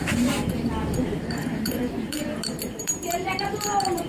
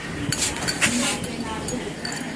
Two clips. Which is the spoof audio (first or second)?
first